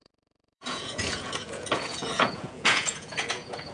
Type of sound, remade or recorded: remade